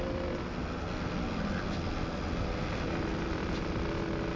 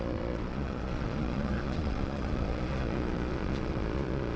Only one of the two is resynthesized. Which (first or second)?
second